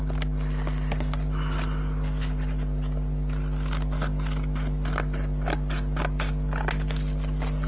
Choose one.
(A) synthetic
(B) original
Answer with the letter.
B